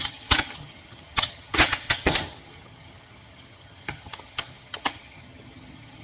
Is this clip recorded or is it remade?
remade